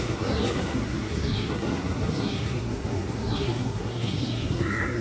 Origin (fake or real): fake